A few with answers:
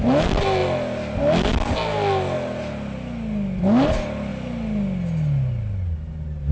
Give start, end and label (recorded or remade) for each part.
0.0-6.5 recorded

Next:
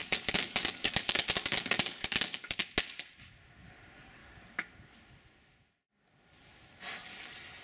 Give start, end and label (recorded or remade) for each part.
0.0-2.6 remade; 2.6-4.2 recorded; 4.2-4.7 remade; 4.7-7.6 recorded

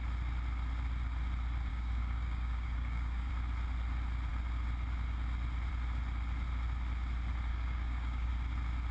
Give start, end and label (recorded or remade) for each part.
0.0-1.7 recorded; 1.7-3.3 remade; 3.3-7.5 recorded; 7.5-8.3 remade; 8.3-8.9 recorded

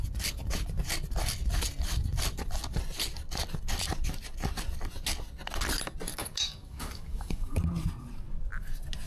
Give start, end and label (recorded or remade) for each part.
0.0-6.1 recorded; 6.1-7.6 remade; 7.6-9.1 recorded

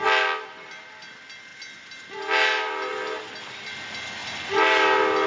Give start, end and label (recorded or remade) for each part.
0.0-5.3 recorded

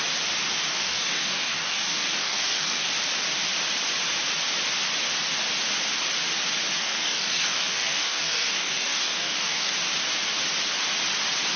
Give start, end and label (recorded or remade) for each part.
0.0-0.7 recorded; 0.7-2.9 remade; 2.9-6.8 recorded; 6.8-9.7 remade; 9.7-11.6 recorded

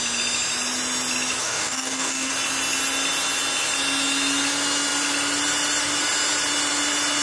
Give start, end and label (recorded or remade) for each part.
0.0-1.4 recorded; 1.4-2.3 remade; 2.3-7.2 recorded